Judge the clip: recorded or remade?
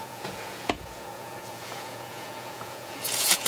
remade